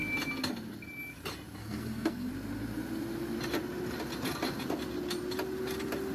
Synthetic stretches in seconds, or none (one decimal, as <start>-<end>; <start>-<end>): 1.6-2.3